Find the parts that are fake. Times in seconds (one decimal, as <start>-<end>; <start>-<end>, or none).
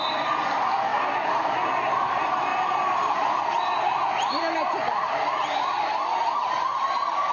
2.5-3.4; 4.3-6.0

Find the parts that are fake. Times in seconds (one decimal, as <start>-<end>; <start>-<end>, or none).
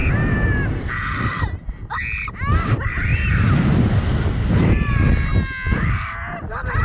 3.1-4.0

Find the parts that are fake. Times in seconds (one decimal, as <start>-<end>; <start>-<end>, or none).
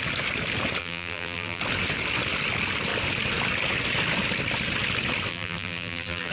0.8-1.6; 5.3-6.3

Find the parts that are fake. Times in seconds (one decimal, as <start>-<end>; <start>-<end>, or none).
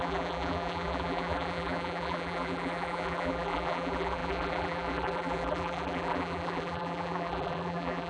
0.0-8.1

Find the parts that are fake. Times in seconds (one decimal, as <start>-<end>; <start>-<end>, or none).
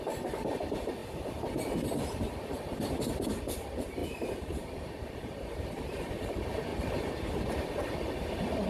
0.0-1.0; 2.0-8.7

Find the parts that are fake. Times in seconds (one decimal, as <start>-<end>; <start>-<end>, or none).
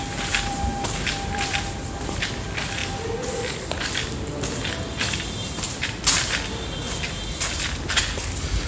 0.0-2.8; 5.1-6.8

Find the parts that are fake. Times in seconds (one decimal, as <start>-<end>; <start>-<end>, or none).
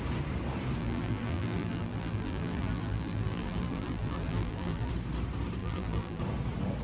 0.8-4.9; 5.6-6.2